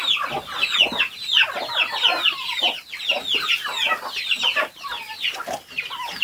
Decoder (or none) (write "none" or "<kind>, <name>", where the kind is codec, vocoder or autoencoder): none